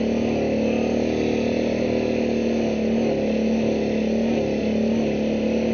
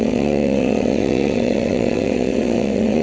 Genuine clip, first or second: first